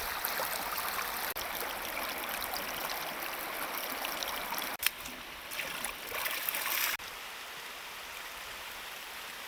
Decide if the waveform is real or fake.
real